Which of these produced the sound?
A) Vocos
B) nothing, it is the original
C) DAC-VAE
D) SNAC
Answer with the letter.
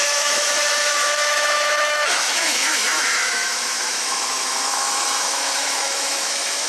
C